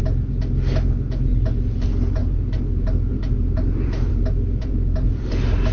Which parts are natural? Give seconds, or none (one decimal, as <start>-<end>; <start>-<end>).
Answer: 0.0-5.7